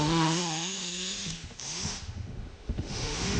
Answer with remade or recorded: remade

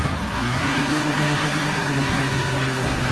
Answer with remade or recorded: remade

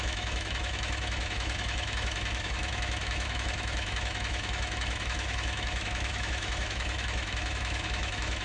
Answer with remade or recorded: remade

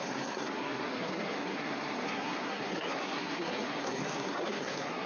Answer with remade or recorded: remade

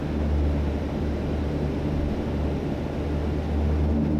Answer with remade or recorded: recorded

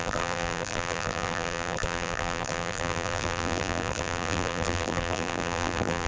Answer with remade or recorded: remade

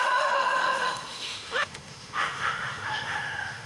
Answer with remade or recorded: remade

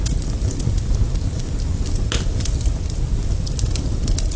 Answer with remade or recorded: recorded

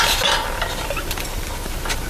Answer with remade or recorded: recorded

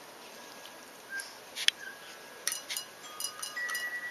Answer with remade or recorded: recorded